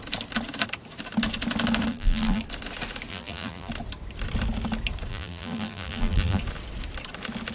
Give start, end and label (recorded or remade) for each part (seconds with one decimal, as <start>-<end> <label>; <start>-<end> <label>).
0.0-1.9 recorded; 1.9-2.4 remade; 2.4-3.1 recorded; 3.1-3.7 remade; 3.7-5.1 recorded; 5.1-6.4 remade; 6.4-7.5 recorded